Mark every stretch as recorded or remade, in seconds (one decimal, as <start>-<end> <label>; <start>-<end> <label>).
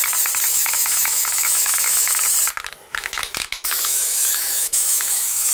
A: 0.0-0.5 recorded; 0.5-2.2 remade; 2.2-2.9 recorded; 2.9-5.5 remade